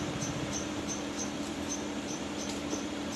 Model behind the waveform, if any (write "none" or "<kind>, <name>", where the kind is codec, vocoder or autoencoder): vocoder, BigVGAN v2